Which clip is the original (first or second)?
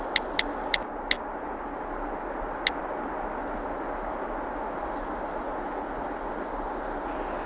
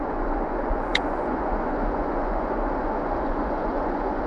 first